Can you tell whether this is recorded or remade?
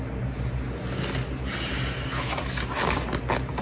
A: recorded